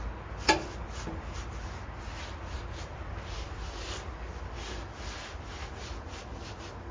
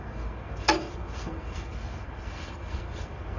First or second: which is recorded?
first